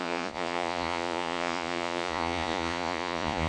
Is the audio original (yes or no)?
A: no